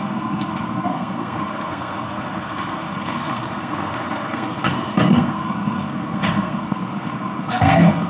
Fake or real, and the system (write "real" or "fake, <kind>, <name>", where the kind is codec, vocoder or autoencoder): fake, codec, SNAC